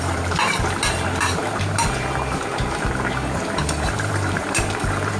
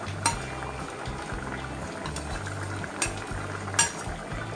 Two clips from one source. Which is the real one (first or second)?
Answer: second